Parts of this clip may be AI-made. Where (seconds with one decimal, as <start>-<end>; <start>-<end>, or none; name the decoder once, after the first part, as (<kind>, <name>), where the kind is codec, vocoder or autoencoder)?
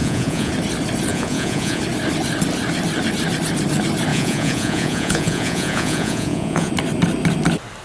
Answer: 0.0-0.5 (vocoder, Vocos); 1.1-1.8; 4.1-6.7